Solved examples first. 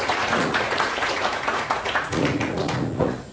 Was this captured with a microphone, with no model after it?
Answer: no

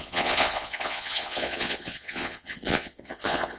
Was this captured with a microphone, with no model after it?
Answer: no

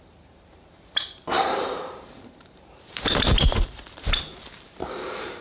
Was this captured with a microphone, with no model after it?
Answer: no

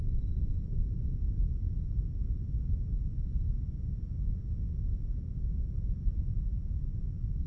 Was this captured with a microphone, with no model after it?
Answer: yes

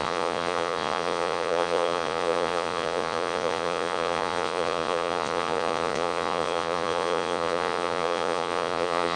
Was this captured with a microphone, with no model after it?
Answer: no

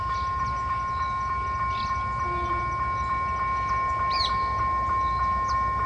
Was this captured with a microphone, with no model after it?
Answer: yes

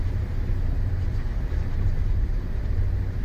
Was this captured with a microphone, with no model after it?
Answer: no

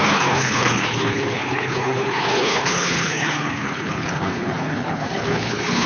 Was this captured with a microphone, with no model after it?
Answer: no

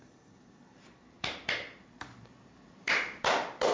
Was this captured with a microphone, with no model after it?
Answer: no